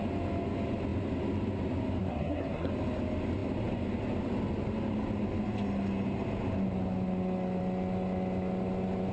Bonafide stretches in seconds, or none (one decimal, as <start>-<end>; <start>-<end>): 0.0-2.0; 2.7-9.1